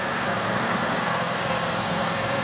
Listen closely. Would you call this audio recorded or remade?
remade